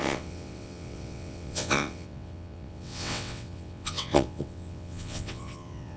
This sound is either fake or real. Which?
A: fake